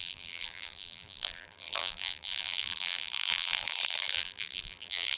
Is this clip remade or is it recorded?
remade